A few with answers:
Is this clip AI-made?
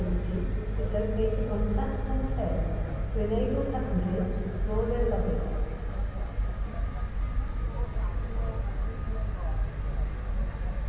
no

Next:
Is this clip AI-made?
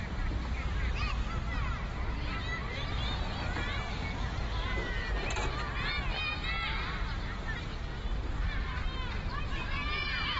no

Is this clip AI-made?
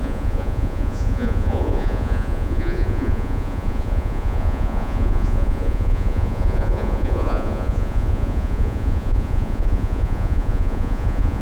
yes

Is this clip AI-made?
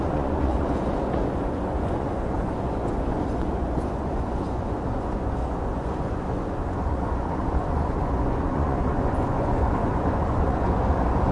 yes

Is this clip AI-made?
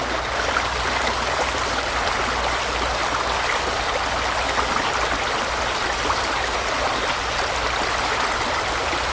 no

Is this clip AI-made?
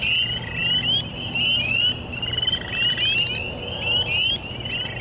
no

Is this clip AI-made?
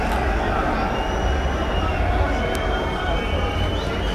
no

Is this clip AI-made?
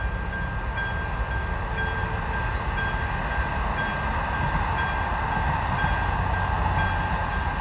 no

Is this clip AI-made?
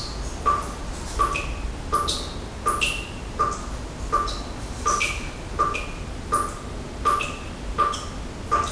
no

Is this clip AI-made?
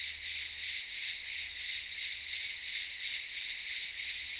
no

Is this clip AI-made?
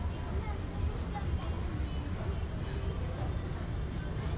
no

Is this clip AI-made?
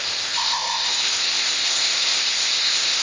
yes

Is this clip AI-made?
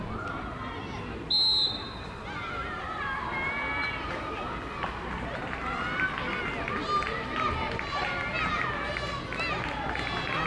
no